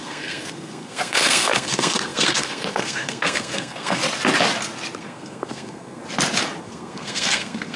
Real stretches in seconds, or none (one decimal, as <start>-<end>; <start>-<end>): 4.0-5.0; 6.0-6.6

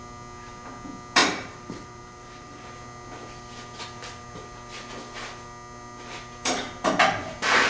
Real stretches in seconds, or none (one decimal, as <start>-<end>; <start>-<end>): 0.0-1.2; 2.7-7.7

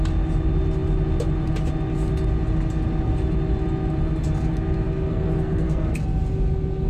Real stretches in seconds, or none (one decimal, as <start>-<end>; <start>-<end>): 0.0-5.1; 6.0-6.9

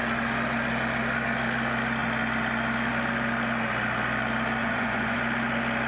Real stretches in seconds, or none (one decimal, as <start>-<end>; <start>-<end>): 0.0-4.6; 5.2-5.9

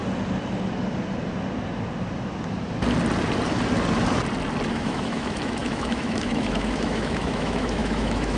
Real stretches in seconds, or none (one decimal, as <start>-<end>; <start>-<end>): 0.0-4.7

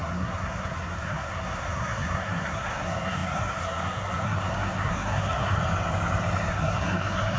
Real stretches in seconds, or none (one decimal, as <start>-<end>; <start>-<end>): 5.6-6.5